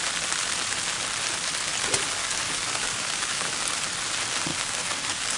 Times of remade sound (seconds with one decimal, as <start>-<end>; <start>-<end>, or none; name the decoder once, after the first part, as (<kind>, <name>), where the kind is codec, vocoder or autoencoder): 2.2-3.7 (codec, DAC); 4.5-5.4